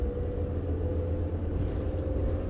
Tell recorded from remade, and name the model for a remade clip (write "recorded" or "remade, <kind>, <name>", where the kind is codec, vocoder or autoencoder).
recorded